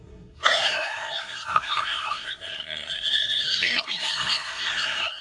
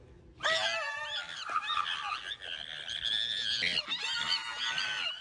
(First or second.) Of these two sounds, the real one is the second